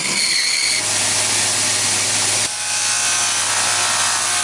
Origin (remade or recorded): recorded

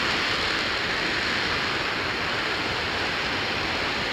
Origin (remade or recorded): recorded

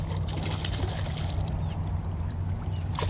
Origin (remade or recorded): recorded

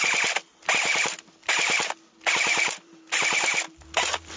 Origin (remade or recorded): remade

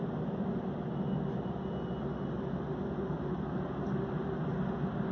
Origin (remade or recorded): recorded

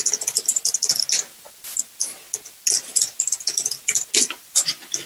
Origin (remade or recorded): recorded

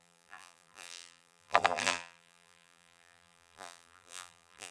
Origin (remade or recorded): remade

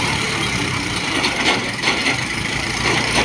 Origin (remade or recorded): remade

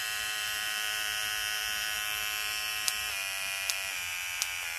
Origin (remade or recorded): remade